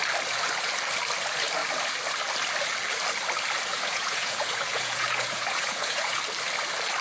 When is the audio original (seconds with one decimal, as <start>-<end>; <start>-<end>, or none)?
0.0-3.7; 6.2-7.0